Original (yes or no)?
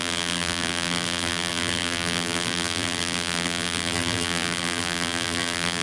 no